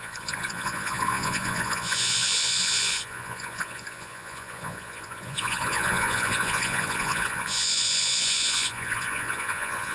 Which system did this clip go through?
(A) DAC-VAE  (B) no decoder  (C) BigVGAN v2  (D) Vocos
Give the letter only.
D